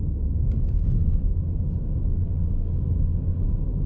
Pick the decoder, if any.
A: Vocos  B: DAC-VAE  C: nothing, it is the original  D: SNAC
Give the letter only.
C